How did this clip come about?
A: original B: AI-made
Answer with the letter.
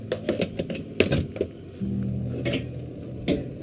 A